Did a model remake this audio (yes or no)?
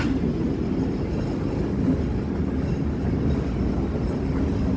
no